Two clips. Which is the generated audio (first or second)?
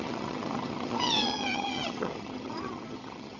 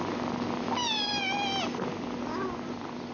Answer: first